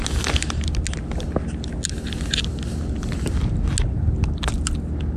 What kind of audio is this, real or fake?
real